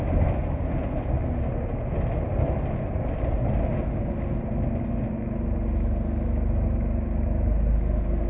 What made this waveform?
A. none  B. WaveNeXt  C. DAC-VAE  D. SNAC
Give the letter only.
A